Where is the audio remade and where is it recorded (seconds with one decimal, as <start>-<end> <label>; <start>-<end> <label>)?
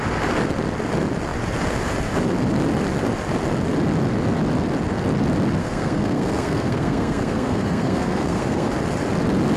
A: 0.0-5.6 recorded; 5.6-8.7 remade; 8.7-9.6 recorded